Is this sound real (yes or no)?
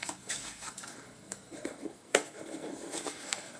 no